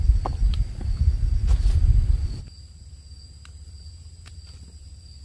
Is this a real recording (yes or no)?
yes